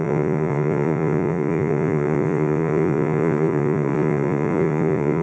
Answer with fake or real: fake